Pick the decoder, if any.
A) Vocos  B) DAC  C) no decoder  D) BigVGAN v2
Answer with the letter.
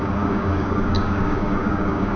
B